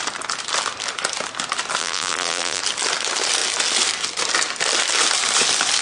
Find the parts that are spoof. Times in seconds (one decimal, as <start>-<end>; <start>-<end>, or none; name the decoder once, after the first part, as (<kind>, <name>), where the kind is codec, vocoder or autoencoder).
1.8-2.6 (vocoder, BigVGAN v2)